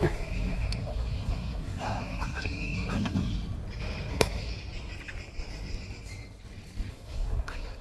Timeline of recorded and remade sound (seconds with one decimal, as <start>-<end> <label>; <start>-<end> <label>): 0.0-3.3 remade; 3.3-4.1 recorded; 4.1-4.5 remade; 4.5-6.9 recorded; 6.9-7.8 remade